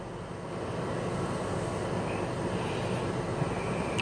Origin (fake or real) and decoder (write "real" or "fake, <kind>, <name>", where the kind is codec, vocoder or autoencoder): real